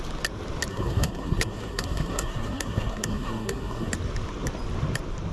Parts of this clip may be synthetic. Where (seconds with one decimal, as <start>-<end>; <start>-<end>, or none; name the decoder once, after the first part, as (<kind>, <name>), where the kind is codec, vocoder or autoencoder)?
0.7-3.9 (codec, SNAC)